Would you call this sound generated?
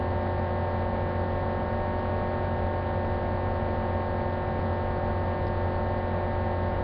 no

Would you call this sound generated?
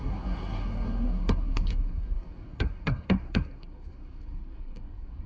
yes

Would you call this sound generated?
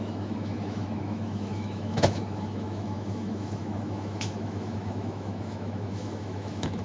yes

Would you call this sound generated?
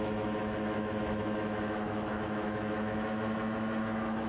yes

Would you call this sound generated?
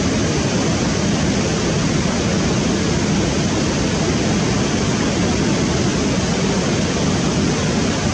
no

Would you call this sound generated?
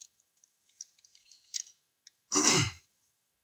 yes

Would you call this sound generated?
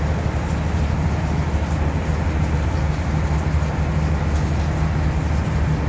no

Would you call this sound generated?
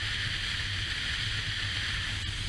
no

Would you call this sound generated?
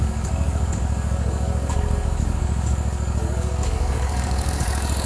yes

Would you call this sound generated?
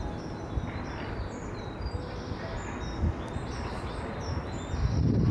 no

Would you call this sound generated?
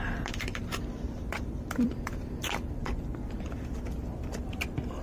yes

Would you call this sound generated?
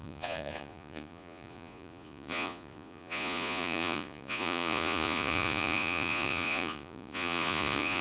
yes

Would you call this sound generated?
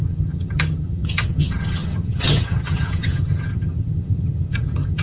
yes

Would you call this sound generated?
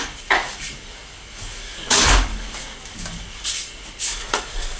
yes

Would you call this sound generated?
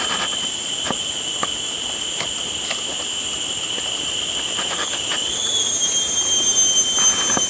no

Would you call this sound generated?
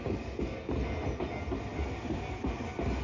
no